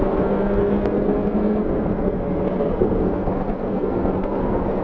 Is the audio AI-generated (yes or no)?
yes